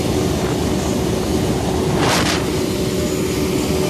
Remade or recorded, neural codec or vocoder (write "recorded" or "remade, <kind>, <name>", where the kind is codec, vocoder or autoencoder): recorded